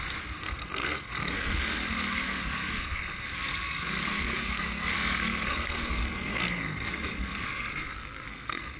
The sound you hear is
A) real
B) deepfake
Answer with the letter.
B